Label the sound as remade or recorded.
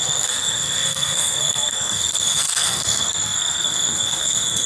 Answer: remade